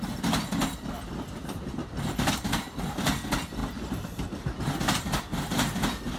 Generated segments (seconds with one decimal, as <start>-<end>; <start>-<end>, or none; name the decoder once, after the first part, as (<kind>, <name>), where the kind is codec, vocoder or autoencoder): 1.8-2.3 (vocoder, BigVGAN v2)

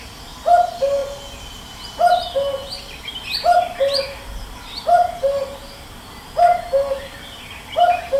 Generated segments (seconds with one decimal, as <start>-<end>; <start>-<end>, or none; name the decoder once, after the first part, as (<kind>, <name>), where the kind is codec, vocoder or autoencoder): none

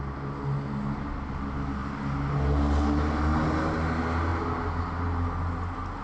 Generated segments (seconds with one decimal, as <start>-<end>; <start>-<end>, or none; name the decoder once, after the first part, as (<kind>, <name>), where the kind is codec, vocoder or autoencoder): none

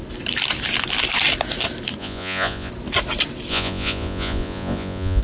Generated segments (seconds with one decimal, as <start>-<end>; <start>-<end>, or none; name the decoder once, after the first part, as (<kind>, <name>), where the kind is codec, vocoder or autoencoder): 2.0-2.7 (vocoder, Vocos); 3.5-5.2

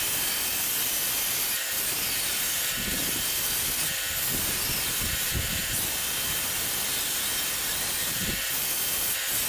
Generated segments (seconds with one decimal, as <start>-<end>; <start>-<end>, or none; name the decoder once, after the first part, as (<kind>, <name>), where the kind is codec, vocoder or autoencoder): none

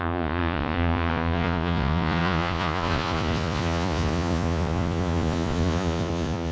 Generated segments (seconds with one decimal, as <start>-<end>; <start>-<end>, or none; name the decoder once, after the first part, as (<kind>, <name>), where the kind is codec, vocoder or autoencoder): 0.0-6.5 (vocoder, Vocos)

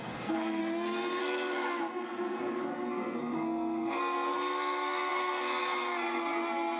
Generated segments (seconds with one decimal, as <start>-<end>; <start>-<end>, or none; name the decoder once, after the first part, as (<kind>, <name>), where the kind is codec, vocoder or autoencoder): 0.0-0.6 (codec, SNAC); 1.2-6.8

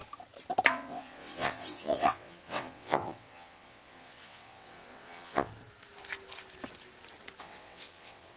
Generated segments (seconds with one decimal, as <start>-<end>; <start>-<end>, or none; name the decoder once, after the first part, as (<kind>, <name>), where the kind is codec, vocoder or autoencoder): 0.7-5.5 (vocoder, WaveNeXt); 7.4-8.4